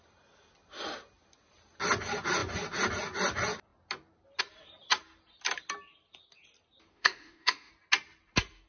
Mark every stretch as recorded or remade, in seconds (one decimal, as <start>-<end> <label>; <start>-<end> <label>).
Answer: 0.0-6.9 recorded; 6.9-7.7 remade; 7.7-8.7 recorded

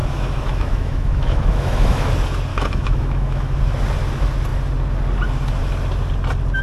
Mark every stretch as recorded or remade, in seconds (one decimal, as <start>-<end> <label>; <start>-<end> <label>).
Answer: 0.0-2.1 remade; 2.1-2.5 recorded; 2.5-3.6 remade; 3.6-6.6 recorded